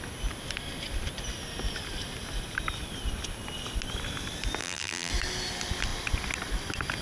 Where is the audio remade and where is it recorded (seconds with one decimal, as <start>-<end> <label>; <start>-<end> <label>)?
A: 0.0-4.6 recorded; 4.6-5.1 remade; 5.1-7.0 recorded